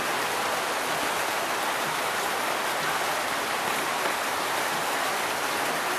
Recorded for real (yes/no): yes